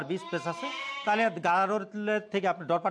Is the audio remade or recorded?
recorded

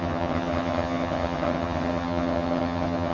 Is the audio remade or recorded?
remade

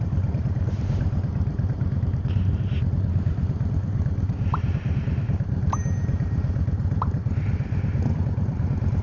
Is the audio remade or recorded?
remade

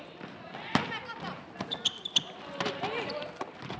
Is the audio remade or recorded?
recorded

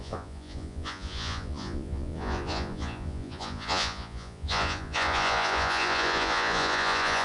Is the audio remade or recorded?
remade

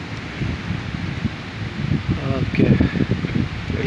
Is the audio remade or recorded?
recorded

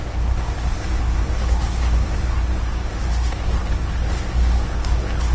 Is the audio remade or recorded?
remade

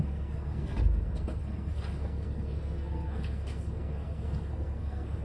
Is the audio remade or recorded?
remade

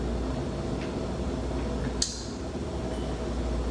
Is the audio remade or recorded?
recorded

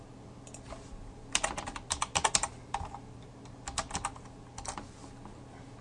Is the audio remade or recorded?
recorded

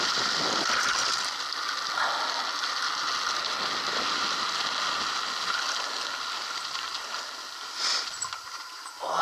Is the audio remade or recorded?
recorded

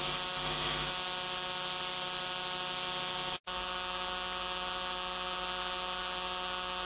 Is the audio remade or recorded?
recorded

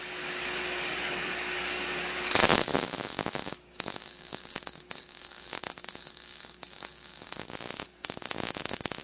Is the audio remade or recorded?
remade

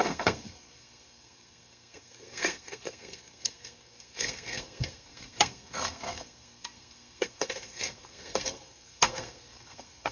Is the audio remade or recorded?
remade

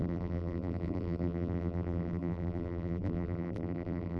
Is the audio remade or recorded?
remade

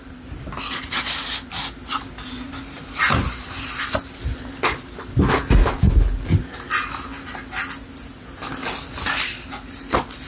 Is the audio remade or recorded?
recorded